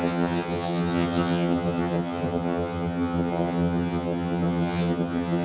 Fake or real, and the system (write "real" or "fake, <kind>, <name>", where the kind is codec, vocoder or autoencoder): fake, vocoder, HiFi-GAN